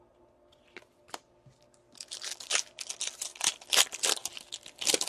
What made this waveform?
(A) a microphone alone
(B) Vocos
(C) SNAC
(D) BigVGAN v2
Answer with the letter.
A